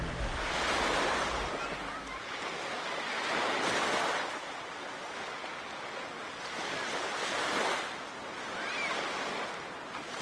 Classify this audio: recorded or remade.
recorded